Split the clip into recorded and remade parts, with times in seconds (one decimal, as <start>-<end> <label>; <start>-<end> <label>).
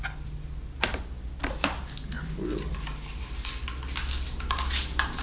0.0-5.2 recorded